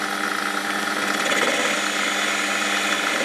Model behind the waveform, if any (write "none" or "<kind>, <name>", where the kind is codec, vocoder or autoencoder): none